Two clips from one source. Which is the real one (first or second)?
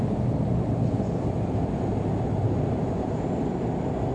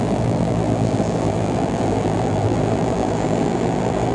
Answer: first